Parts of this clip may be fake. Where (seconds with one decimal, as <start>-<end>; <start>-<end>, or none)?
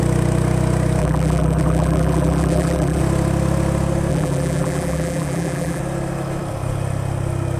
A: 1.0-3.0; 4.1-5.8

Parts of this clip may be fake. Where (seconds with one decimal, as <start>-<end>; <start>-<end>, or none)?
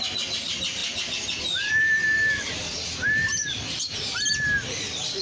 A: 0.8-3.1